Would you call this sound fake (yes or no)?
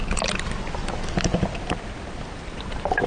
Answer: no